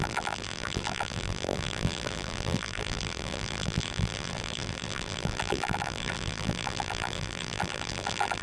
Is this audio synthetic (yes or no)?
yes